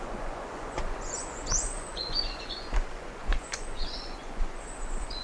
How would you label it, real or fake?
fake